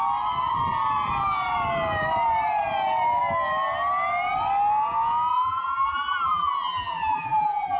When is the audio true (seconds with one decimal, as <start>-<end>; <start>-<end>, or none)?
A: 0.0-5.3